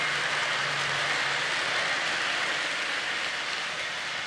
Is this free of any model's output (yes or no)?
yes